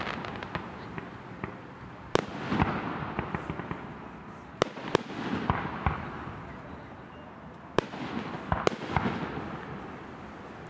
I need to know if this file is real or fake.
real